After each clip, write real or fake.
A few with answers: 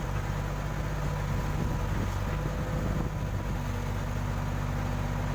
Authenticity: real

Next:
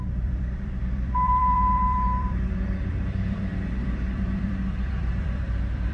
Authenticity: fake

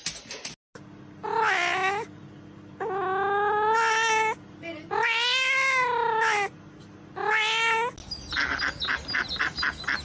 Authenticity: real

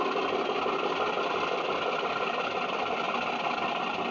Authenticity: real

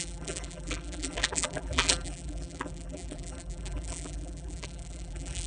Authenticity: fake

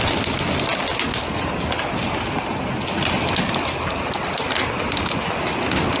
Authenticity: real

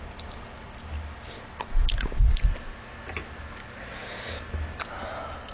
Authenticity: real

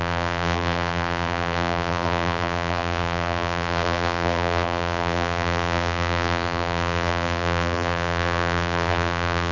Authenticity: fake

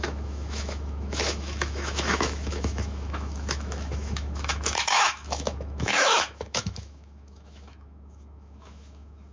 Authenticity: fake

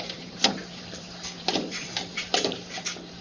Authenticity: fake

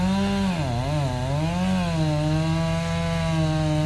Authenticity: real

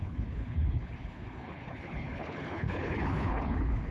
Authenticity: fake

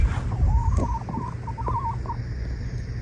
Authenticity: real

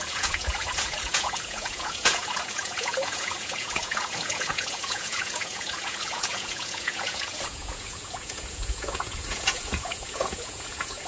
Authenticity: fake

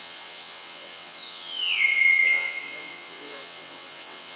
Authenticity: fake